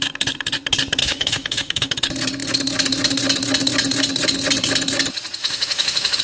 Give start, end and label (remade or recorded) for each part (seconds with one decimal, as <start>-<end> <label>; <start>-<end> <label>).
0.0-1.0 recorded; 1.0-1.9 remade; 1.9-5.4 recorded; 5.4-6.2 remade